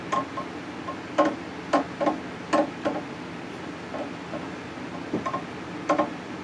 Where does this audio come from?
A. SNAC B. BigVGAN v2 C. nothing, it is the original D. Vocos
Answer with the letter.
C